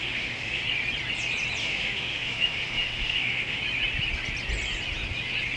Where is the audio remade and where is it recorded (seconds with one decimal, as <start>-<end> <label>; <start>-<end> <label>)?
0.0-0.6 remade; 0.6-1.6 recorded; 1.6-3.6 remade; 3.6-5.6 recorded